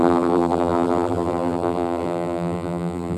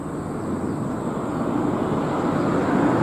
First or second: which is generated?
first